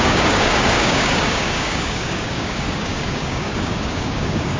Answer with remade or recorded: remade